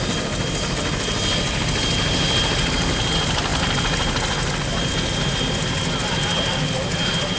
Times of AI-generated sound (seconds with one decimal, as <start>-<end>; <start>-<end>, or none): none